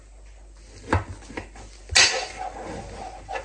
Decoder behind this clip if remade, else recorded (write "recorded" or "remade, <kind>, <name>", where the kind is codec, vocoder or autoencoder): recorded